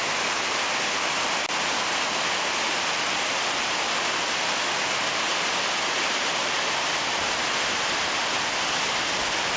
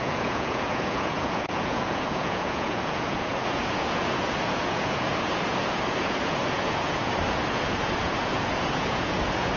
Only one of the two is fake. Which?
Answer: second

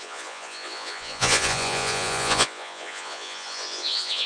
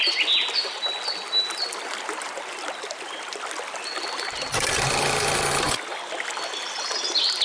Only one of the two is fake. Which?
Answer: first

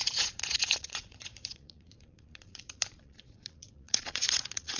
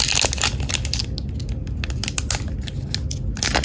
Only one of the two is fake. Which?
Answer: first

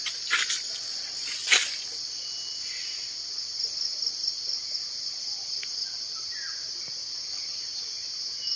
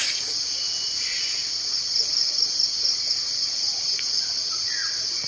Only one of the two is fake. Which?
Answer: second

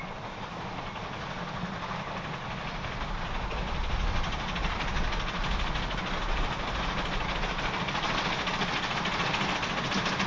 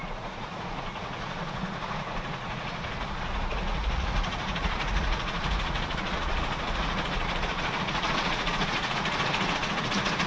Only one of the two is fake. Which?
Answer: second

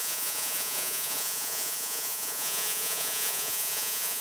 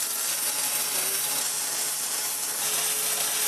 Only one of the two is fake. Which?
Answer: first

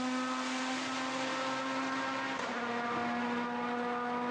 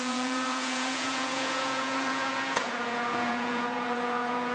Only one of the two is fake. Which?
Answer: second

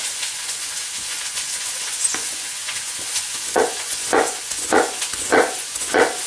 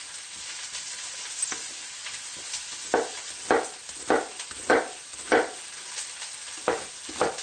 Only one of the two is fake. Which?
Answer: first